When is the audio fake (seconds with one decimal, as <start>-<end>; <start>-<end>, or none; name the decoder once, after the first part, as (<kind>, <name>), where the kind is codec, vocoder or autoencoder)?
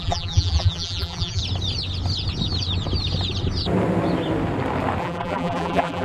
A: 0.0-1.4 (vocoder, BigVGAN v2); 5.0-6.0